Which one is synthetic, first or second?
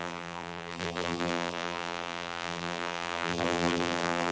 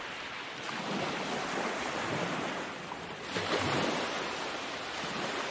first